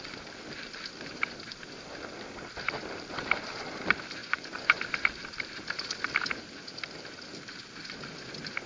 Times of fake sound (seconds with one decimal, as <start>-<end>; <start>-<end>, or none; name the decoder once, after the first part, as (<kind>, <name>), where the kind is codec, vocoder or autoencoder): 4.2-4.8 (vocoder, Vocos)